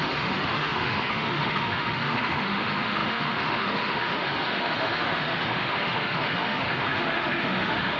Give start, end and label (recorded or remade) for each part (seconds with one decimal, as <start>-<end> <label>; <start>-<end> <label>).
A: 0.0-8.0 remade